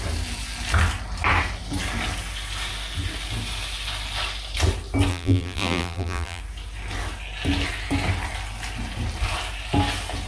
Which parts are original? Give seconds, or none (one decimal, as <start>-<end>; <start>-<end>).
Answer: 0.0-5.1; 6.4-10.3